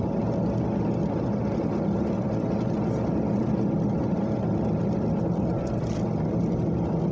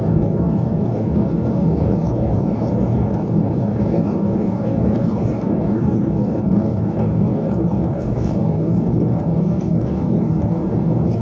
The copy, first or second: second